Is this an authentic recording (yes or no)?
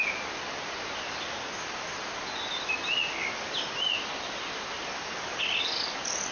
yes